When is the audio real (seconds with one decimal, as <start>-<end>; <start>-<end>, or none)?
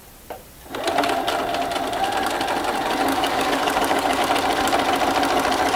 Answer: 0.0-3.1; 4.2-5.8